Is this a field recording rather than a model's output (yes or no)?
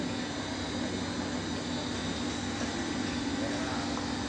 yes